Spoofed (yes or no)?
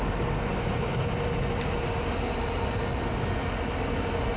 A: no